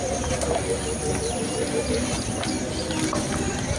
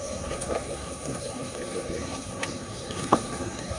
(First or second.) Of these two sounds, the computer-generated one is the second